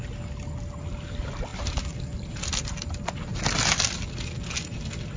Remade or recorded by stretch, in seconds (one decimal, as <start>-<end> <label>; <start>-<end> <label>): 0.0-5.2 recorded

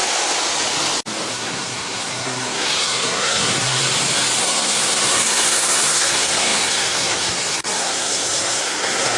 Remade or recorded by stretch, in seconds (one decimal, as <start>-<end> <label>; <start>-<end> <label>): 0.0-1.3 recorded; 1.3-3.8 remade; 3.8-4.4 recorded; 4.4-9.2 remade

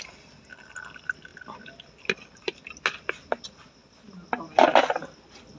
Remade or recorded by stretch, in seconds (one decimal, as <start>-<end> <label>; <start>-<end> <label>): 0.0-5.6 recorded

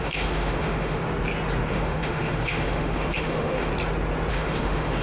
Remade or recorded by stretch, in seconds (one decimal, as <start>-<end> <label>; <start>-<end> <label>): 0.0-1.0 remade; 1.0-1.7 recorded; 1.7-3.7 remade; 3.7-4.3 recorded; 4.3-5.0 remade

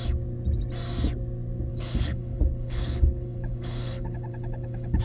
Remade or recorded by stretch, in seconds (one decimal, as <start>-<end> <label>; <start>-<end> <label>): 0.0-1.7 recorded; 1.7-5.0 remade

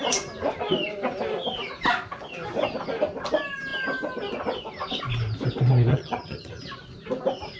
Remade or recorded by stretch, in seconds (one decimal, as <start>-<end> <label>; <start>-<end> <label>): 0.0-5.9 recorded; 5.9-6.6 remade; 6.6-7.6 recorded